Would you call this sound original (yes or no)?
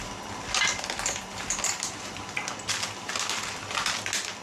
yes